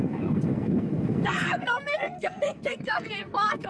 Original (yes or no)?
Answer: no